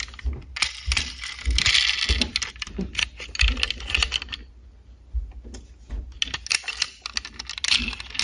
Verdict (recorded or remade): recorded